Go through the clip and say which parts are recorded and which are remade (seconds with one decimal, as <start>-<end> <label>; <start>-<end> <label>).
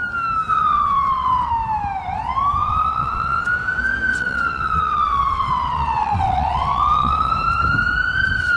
0.0-0.5 recorded; 0.5-1.5 remade; 1.5-2.6 recorded; 2.6-3.4 remade; 3.4-4.1 recorded; 4.1-7.3 remade; 7.3-8.6 recorded